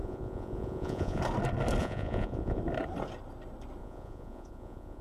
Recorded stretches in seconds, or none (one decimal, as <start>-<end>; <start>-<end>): 1.2-1.8; 2.6-3.8